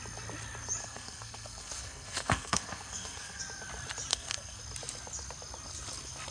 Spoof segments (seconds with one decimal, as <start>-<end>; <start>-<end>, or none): 0.8-3.4; 4.1-4.6